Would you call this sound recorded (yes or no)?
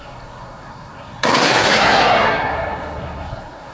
no